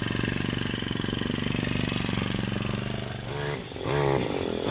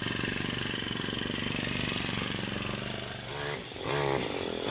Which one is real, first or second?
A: first